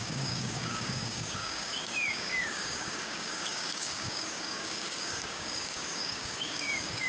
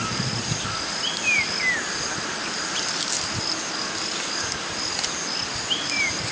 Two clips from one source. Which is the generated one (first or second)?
first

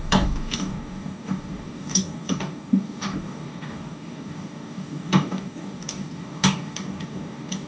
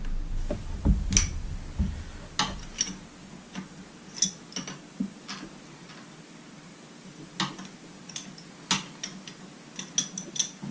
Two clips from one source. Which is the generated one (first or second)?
first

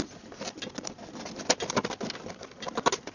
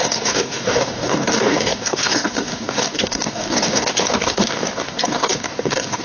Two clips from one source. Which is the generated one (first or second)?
second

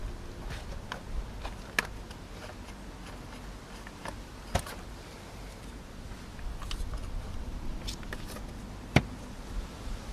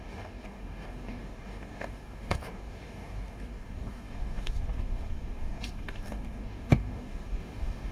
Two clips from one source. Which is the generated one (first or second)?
second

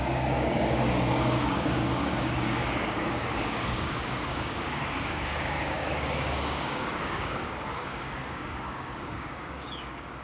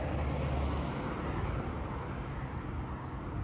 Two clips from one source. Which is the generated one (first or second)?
first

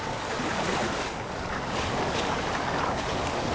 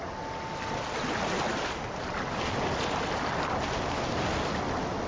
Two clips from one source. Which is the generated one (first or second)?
first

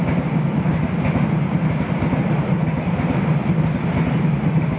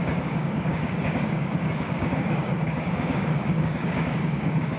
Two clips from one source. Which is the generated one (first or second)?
second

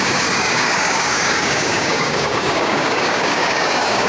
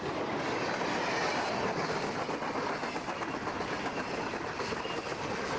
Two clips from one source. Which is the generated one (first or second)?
first